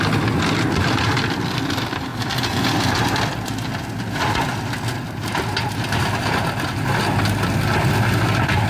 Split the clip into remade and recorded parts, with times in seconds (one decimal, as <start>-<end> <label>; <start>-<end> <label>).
0.0-8.7 recorded